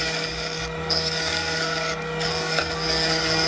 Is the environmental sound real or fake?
fake